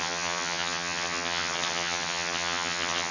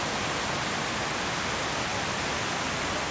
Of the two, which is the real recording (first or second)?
second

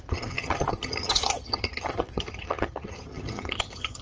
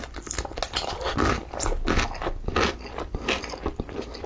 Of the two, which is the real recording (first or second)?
second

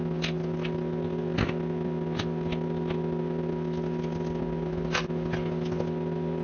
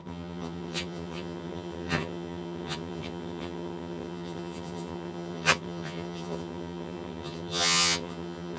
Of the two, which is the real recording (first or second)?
first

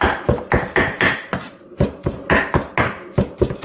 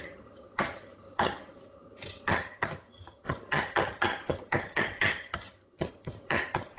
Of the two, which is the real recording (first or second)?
first